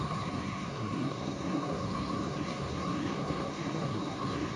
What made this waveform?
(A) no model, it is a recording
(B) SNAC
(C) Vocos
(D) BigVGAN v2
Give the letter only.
B